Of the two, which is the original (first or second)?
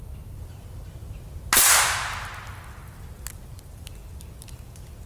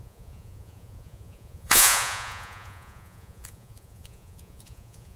first